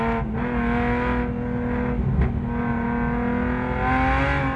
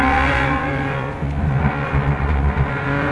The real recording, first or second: first